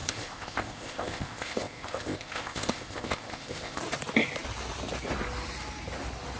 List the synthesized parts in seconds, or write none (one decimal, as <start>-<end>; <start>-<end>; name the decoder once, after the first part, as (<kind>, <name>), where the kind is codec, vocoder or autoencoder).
0.0-3.8 (codec, ZipCodec)